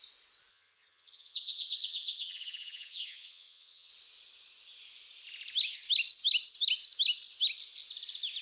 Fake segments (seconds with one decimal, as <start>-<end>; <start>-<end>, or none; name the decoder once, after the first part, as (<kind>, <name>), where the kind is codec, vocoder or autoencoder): 0.5-3.9 (vocoder, HiFi-GAN)